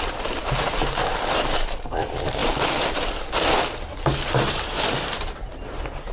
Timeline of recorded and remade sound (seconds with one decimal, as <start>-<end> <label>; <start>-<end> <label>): 0.0-6.1 remade